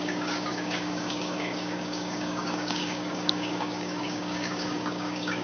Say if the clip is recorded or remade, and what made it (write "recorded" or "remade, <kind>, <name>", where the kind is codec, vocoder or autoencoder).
remade, codec, DAC